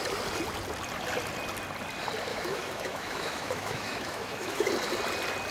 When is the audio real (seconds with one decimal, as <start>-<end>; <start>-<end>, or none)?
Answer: 0.0-2.3; 4.7-5.5